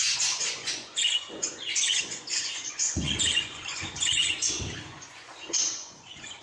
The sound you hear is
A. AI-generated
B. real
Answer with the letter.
A